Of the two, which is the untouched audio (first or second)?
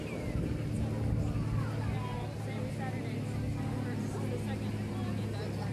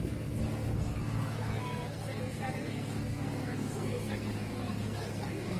first